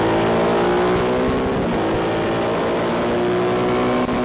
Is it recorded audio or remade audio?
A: recorded